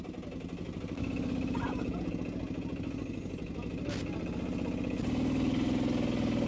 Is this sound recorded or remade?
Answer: recorded